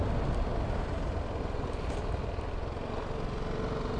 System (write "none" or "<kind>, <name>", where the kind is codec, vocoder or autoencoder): none